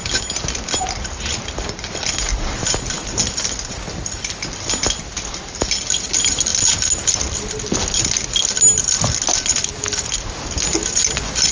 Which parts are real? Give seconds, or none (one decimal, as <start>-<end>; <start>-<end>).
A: 0.0-11.5

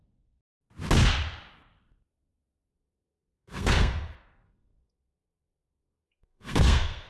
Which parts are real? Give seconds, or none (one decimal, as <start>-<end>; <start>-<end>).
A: 0.0-2.7

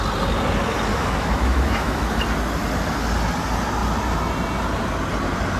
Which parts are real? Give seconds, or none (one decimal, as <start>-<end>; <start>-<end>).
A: 0.0-0.9; 2.2-5.6

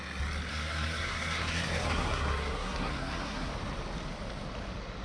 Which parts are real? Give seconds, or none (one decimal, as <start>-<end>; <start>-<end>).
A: 0.0-0.5; 3.5-5.0